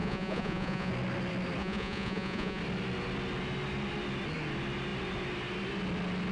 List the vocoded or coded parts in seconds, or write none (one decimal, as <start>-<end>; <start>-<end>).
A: 0.0-0.9; 1.6-2.6